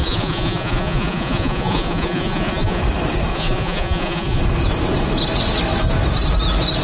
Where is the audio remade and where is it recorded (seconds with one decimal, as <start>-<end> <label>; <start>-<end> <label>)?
0.0-2.8 remade; 2.8-3.3 recorded; 3.3-4.4 remade; 4.4-6.8 recorded

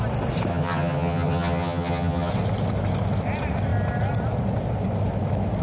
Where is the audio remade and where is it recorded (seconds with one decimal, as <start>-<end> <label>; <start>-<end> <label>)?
0.0-0.5 recorded; 0.5-2.3 remade; 2.3-5.6 recorded

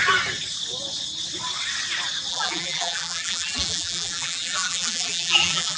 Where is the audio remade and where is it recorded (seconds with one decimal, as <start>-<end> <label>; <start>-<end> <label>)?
0.0-2.3 recorded; 2.3-5.8 remade

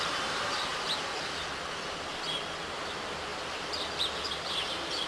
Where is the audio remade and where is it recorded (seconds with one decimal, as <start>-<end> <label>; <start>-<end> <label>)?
0.0-0.7 remade; 0.7-2.6 recorded; 2.6-5.1 remade

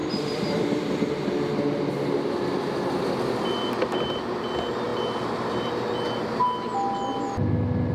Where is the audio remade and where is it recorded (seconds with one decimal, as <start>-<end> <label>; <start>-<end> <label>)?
0.0-1.1 remade; 1.1-7.9 recorded

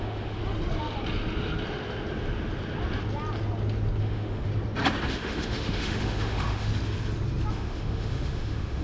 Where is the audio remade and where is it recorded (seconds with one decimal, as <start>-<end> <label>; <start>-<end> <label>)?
0.0-0.4 remade; 0.4-4.0 recorded; 4.0-4.5 remade; 4.5-5.1 recorded; 5.1-6.7 remade; 6.7-7.5 recorded; 7.5-8.8 remade